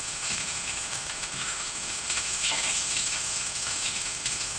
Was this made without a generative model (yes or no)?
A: no